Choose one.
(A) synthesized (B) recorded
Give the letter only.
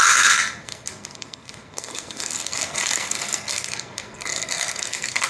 A